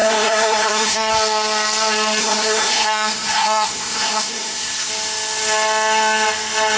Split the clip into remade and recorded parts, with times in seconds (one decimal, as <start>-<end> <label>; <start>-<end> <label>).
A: 0.0-1.1 remade; 1.1-2.2 recorded; 2.2-4.9 remade; 4.9-6.8 recorded